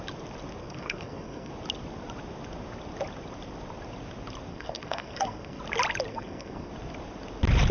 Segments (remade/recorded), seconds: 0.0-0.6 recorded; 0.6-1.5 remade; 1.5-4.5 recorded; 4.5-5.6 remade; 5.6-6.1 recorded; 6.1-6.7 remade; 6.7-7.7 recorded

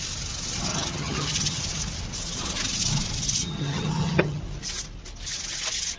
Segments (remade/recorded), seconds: 0.0-0.7 recorded; 0.7-1.6 remade; 1.6-3.4 recorded; 3.4-4.4 remade; 4.4-6.0 recorded

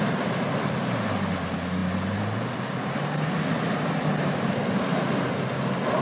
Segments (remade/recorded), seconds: 0.0-6.0 recorded

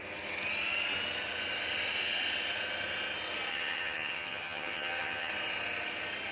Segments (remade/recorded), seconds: 0.0-3.5 recorded; 3.5-5.3 remade; 5.3-6.3 recorded

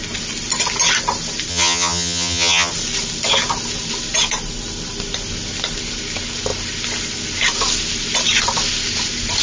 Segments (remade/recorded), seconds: 0.0-1.5 recorded; 1.5-2.7 remade; 2.7-9.4 recorded

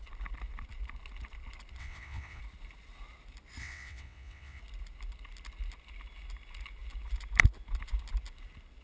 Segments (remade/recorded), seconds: 0.0-1.8 recorded; 1.8-2.4 remade; 2.4-3.6 recorded; 3.6-4.6 remade; 4.6-8.8 recorded